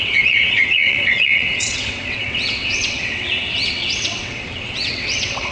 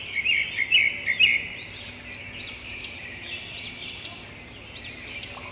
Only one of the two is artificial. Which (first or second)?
first